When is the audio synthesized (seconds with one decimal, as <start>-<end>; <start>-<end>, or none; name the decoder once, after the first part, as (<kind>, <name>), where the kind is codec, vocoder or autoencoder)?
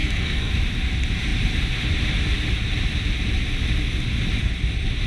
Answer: 0.0-0.5 (codec, SNAC)